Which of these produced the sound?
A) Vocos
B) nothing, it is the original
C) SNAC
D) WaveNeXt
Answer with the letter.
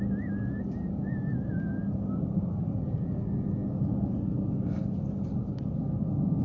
B